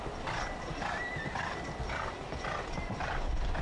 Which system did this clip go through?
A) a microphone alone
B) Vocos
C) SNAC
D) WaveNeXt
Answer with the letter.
A